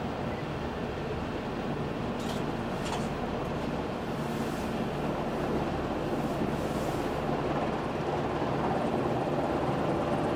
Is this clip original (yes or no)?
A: yes